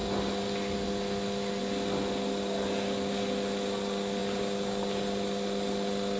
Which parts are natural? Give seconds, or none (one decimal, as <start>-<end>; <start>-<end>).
0.0-6.2